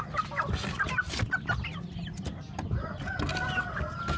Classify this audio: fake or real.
real